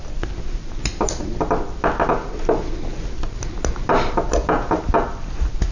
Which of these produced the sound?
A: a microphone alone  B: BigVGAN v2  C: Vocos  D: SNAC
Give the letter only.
A